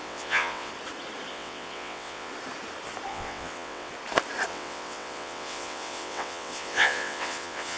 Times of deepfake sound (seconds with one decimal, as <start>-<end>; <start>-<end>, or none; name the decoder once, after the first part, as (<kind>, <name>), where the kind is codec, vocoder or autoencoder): 0.0-0.7 (vocoder, WaveNeXt); 1.3-2.3; 3.1-3.9; 4.5-7.8